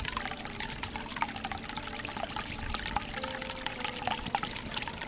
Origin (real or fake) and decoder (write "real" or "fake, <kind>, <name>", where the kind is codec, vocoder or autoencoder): real